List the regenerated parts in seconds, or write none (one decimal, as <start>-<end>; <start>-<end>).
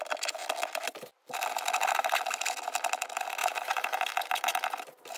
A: 3.4-4.0